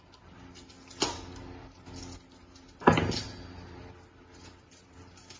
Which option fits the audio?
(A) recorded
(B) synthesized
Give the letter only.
A